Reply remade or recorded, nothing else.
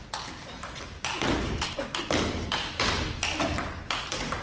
recorded